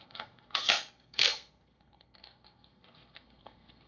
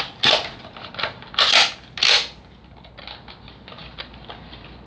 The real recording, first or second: second